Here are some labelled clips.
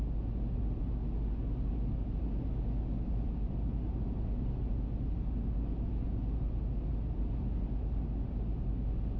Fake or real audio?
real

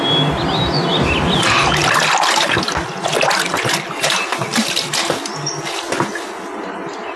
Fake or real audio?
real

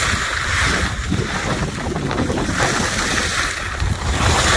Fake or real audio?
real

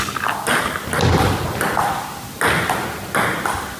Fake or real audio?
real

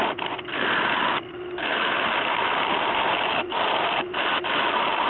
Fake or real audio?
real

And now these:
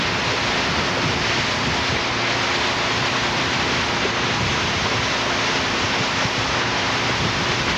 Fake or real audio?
real